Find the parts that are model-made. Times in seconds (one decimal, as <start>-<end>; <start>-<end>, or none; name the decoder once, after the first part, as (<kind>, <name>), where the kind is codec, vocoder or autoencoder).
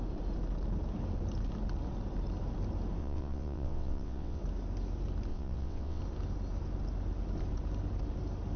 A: 3.0-4.4 (vocoder, WaveNeXt); 5.3-6.0